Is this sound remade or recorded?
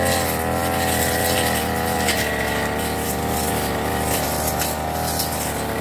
recorded